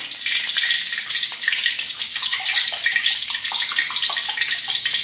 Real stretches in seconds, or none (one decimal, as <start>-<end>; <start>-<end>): 0.0-1.0; 4.0-5.0